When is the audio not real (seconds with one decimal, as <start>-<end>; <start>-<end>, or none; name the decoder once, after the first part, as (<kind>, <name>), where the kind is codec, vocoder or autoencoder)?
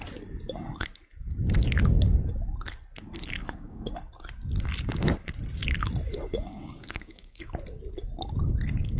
3.4-3.9 (codec, DAC); 6.5-7.4